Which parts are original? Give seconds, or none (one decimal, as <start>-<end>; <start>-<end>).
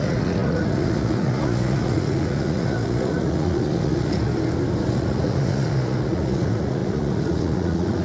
4.3-4.9